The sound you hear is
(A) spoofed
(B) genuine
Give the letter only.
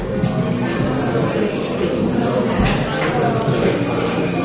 B